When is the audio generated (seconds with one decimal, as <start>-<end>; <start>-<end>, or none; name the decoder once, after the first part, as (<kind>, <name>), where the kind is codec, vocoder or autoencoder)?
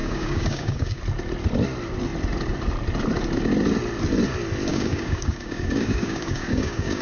0.0-1.0 (codec, DAC); 4.7-7.0